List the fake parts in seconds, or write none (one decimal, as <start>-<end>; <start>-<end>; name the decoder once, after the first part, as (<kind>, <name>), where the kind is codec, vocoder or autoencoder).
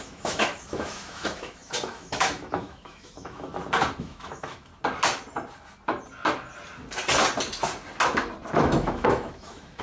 0.0-3.5 (autoencoder, DAC-VAE); 4.0-4.7; 8.5-9.8